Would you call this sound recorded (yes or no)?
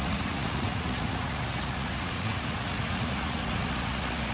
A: no